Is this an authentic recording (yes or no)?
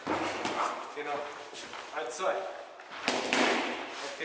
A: no